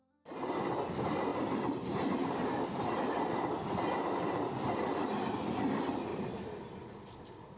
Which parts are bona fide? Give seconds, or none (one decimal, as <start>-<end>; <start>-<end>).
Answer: 0.0-1.3; 2.1-6.1